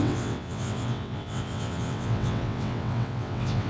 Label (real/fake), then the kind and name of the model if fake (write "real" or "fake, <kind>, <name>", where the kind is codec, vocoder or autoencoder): fake, vocoder, WaveNeXt